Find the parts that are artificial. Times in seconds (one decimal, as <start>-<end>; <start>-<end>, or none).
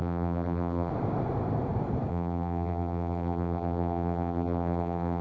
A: 0.0-0.9; 2.1-5.2